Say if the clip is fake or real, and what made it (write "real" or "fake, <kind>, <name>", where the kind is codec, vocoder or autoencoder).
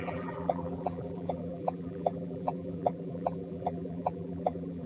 fake, vocoder, BigVGAN v2